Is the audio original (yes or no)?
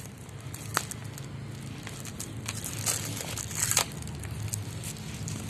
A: yes